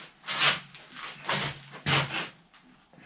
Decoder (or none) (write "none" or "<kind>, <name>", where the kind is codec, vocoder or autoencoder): none